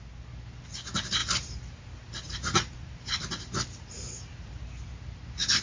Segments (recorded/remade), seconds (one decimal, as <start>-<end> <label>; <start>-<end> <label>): 0.0-1.2 recorded; 1.2-4.6 remade; 4.6-5.6 recorded